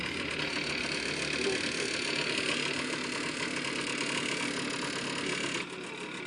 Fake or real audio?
real